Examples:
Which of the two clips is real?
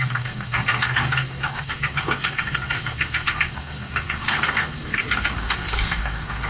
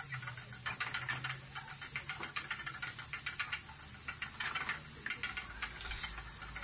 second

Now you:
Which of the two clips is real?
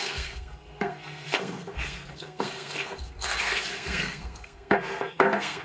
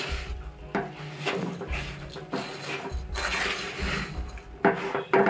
second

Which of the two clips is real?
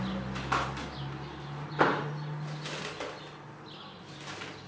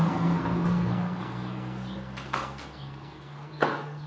first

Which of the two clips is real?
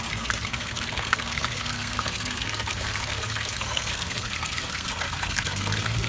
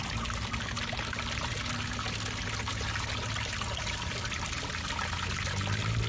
second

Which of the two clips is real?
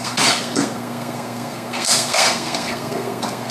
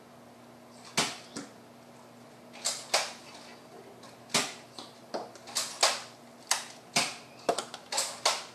second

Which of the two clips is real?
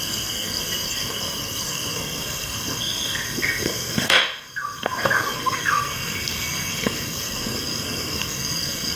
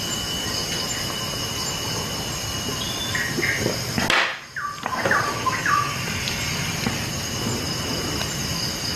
second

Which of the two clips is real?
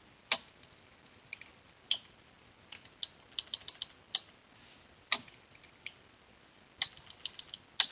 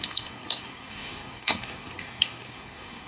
first